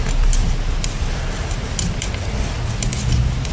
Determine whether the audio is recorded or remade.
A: recorded